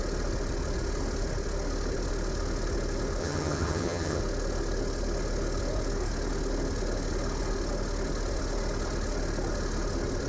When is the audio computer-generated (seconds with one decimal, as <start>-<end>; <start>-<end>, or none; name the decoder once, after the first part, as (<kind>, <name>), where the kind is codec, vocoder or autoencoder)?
3.2-4.2 (vocoder, HiFi-GAN)